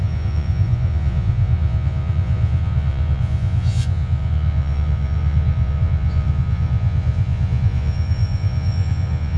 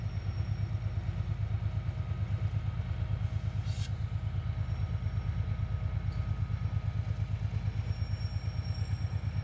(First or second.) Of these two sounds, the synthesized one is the first